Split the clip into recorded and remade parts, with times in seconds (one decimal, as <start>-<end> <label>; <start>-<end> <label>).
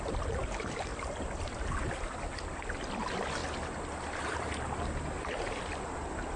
0.0-6.4 recorded